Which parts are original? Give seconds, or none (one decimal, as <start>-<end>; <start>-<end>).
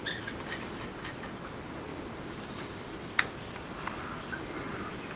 0.0-1.9; 3.2-5.2